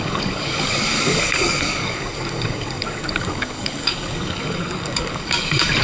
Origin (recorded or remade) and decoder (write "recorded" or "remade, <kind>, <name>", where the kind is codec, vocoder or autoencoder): remade, codec, DAC